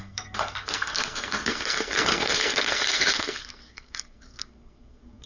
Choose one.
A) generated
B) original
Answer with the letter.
A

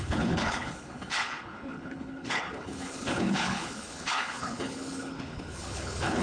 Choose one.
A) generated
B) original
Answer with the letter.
A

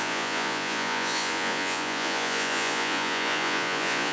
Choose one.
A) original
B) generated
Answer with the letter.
B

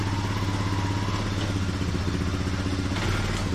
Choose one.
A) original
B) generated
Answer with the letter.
A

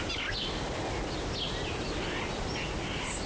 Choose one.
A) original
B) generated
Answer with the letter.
A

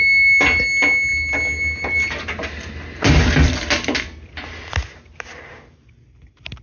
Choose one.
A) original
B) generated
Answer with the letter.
A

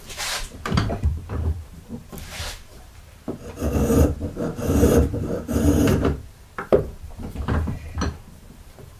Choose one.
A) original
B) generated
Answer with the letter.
B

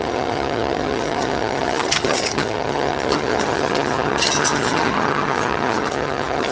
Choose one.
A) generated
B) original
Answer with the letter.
A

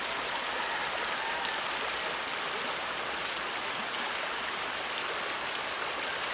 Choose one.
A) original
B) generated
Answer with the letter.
A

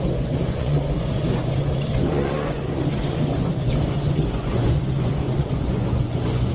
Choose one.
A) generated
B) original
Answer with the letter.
A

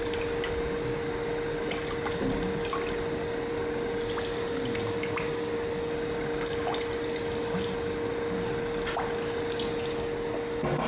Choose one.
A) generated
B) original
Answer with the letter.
B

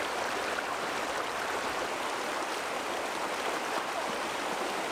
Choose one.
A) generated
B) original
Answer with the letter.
A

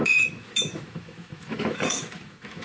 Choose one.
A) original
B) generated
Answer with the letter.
B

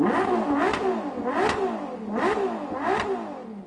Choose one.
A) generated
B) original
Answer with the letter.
B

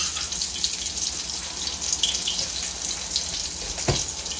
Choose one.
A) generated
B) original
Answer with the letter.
B